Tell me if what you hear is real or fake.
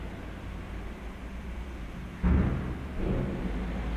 real